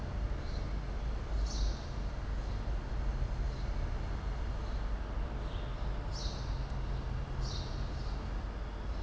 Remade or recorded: recorded